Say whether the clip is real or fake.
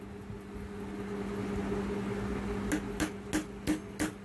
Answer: real